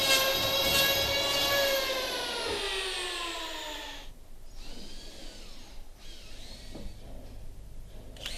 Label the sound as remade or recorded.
recorded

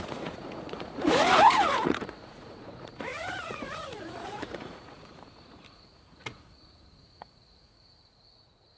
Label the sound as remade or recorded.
remade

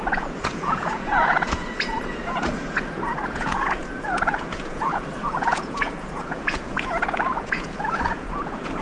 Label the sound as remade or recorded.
remade